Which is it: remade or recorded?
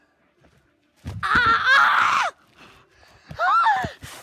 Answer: recorded